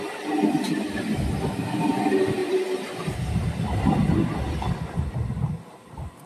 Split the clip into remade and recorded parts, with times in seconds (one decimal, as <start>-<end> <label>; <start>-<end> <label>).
0.0-6.3 recorded